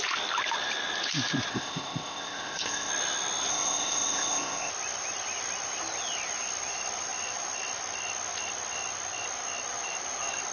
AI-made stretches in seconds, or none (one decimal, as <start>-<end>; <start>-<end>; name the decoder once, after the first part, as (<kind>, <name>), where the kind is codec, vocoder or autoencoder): 1.5-2.9 (codec, ZipCodec); 3.5-4.7